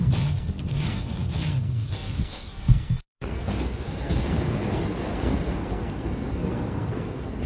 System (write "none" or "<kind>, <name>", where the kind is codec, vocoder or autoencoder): codec, SNAC